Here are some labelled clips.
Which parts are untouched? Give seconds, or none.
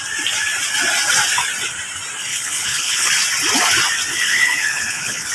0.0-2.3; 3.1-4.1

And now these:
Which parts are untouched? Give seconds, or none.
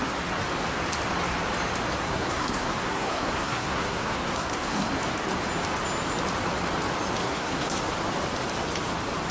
0.0-2.0; 4.9-7.2; 7.8-9.3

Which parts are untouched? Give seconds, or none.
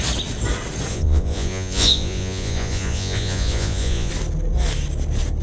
0.0-0.9; 4.1-5.4